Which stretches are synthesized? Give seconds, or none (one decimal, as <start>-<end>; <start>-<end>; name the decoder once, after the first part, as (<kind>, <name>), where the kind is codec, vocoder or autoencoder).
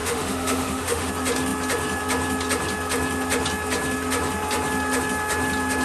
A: 0.0-1.1 (autoencoder, DAC-VAE)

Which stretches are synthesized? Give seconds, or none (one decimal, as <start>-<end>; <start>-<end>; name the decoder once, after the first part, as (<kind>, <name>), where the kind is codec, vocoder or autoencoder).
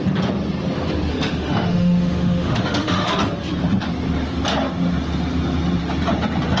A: 1.1-3.1 (autoencoder, DAC-VAE)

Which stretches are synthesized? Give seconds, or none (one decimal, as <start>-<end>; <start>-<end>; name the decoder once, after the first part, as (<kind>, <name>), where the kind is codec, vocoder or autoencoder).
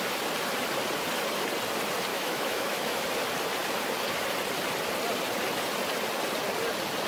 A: 2.1-3.0 (autoencoder, DAC-VAE)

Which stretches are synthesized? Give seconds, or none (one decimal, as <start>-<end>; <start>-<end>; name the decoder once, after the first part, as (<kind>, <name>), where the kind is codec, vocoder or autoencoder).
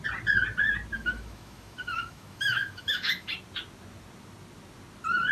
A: 0.9-3.3 (autoencoder, DAC-VAE)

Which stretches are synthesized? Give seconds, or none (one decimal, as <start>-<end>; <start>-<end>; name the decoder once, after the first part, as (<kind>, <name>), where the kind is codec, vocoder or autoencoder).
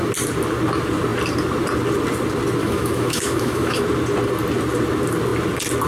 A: 2.6-3.8 (autoencoder, DAC-VAE)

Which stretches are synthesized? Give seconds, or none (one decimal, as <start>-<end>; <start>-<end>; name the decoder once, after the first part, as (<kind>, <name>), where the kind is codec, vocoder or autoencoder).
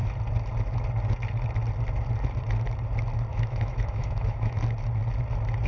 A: 3.3-4.6 (autoencoder, DAC-VAE)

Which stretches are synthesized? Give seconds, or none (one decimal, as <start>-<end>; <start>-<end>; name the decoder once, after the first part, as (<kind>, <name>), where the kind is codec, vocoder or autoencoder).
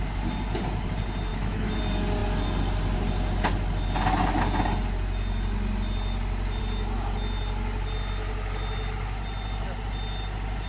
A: 1.3-1.8 (autoencoder, DAC-VAE)